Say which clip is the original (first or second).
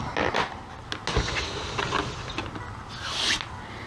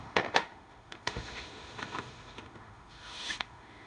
first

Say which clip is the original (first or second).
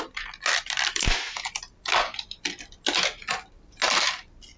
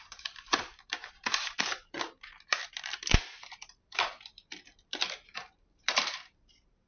first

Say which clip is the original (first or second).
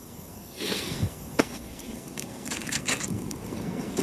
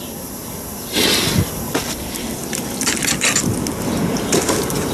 second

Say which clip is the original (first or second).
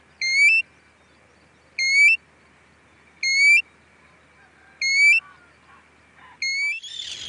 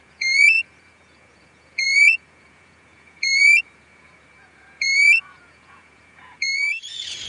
first